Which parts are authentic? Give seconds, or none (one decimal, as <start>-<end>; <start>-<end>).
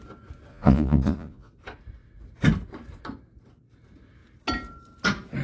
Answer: 0.0-0.5; 1.5-5.4